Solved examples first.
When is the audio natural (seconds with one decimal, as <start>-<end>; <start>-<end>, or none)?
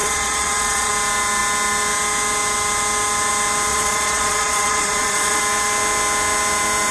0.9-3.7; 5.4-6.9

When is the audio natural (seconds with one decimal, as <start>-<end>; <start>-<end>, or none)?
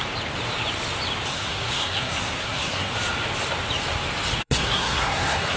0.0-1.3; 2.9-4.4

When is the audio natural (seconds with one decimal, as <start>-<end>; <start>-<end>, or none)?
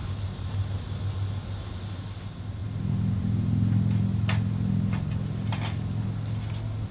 0.0-6.9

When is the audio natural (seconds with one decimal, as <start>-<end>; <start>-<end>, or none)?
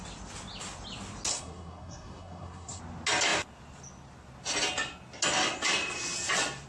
0.0-1.3; 2.8-6.7